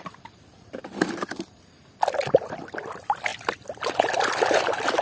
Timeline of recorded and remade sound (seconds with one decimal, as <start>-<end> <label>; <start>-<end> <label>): 0.0-3.3 remade; 3.3-3.8 recorded; 3.8-5.0 remade